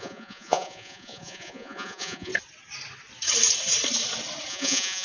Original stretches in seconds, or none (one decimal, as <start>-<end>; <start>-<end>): 2.3-4.5